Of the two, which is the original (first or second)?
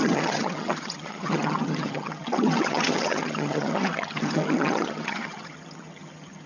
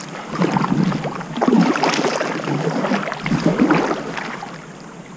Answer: second